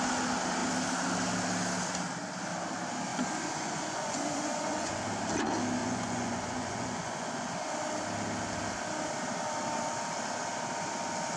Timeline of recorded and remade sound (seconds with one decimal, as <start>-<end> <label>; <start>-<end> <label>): 0.0-3.1 recorded; 3.1-5.0 remade; 5.0-5.8 recorded; 5.8-7.7 remade; 7.7-11.4 recorded